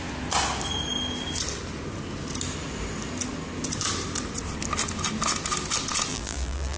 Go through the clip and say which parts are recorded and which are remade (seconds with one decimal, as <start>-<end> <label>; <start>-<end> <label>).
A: 0.0-6.1 recorded; 6.1-6.8 remade